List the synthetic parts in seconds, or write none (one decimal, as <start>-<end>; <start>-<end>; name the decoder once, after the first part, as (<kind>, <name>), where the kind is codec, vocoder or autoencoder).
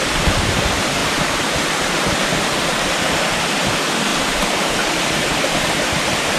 none